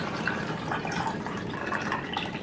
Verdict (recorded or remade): recorded